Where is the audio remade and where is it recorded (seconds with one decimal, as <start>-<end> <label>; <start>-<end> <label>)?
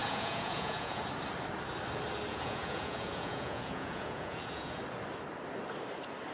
0.0-1.0 remade; 1.0-2.3 recorded; 2.3-4.8 remade; 4.8-6.3 recorded